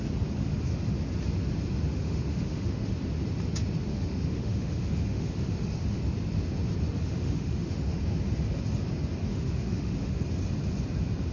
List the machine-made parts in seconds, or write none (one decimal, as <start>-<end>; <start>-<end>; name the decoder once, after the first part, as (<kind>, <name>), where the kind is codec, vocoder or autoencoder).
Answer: 1.9-2.9 (autoencoder, DAC-VAE); 3.9-6.0; 7.0-8.0; 9.3-10.2